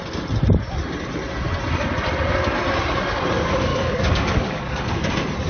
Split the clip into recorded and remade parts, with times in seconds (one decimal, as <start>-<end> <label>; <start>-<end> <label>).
0.0-3.7 recorded; 3.7-5.0 remade; 5.0-5.5 recorded